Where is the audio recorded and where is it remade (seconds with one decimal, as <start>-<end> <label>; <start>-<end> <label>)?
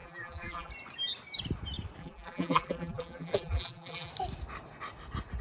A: 0.0-0.7 remade; 0.7-2.0 recorded; 2.0-4.1 remade; 4.1-5.4 recorded